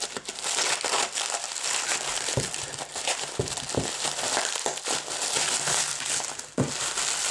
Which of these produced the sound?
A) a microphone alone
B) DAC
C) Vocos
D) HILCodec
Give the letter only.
A